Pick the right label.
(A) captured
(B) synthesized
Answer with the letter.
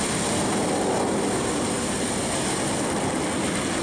A